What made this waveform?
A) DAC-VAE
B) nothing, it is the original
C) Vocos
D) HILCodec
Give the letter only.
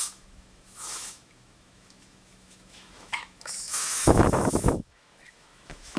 A